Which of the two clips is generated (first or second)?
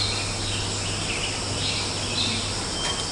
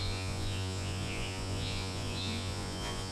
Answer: second